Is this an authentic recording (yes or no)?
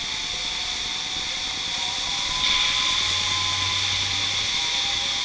yes